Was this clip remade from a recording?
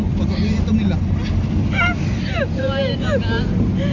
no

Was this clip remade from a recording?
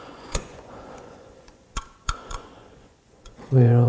yes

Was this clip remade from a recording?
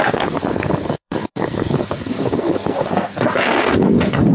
yes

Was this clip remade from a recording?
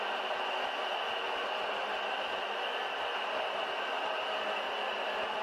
no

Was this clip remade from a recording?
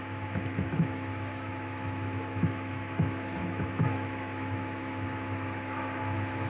yes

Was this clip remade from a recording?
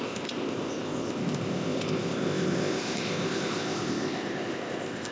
yes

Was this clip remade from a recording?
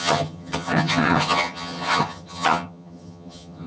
yes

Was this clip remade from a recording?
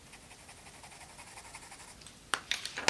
no